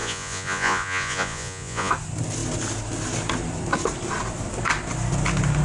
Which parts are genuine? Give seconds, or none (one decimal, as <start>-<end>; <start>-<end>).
1.9-5.6